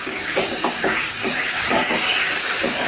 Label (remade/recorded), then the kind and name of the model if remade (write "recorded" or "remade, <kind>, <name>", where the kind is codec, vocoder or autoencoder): remade, codec, DAC